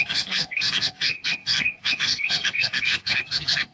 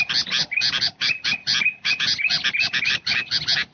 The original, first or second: second